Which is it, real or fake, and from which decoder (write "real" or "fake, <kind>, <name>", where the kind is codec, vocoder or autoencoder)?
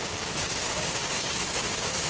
fake, codec, DAC